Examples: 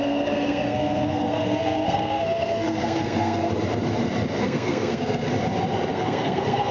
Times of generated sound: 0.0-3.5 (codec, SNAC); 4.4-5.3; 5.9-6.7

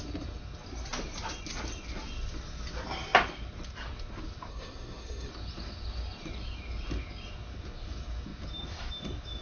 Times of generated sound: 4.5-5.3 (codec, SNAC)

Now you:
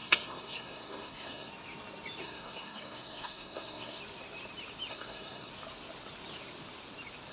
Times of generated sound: 0.0-1.5 (codec, SNAC); 2.2-4.0; 4.9-5.5